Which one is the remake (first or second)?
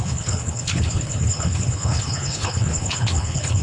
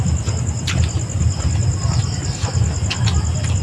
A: first